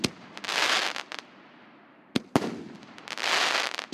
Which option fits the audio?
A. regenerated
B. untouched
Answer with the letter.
B